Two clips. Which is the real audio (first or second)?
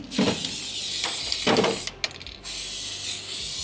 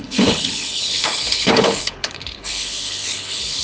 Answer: first